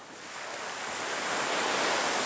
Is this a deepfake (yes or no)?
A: no